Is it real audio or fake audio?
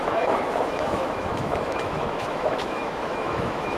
fake